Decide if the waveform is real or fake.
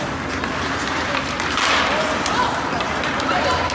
real